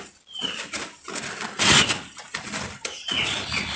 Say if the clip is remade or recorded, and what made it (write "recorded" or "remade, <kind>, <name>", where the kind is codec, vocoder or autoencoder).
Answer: recorded